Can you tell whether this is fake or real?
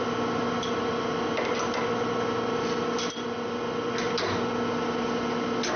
real